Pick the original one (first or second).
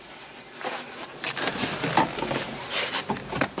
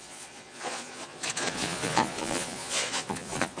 first